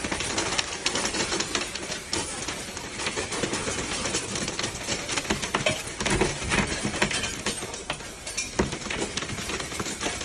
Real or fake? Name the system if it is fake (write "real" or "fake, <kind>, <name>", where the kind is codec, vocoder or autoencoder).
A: fake, vocoder, BigVGAN v2